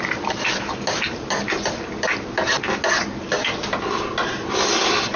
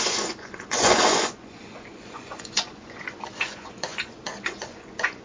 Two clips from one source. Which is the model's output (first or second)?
second